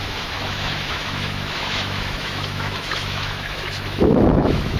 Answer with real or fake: fake